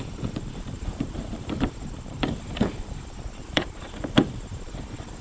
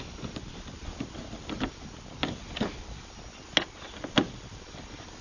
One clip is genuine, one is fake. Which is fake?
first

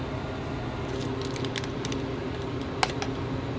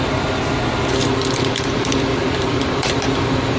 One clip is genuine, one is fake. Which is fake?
second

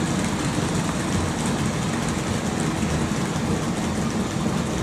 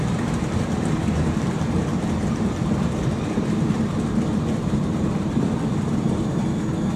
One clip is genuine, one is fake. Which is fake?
second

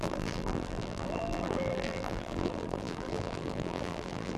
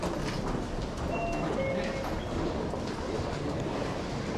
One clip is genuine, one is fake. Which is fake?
first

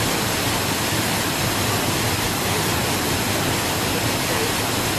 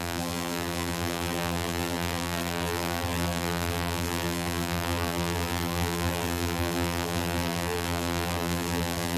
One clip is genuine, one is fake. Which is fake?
second